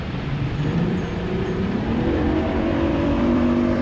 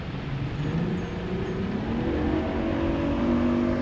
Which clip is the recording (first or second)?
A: second